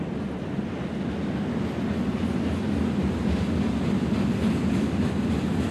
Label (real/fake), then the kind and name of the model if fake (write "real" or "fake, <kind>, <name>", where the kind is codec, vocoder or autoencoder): real